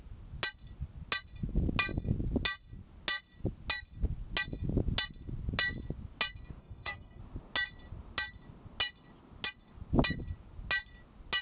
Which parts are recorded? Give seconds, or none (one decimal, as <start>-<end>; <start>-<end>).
0.0-6.6; 7.2-11.4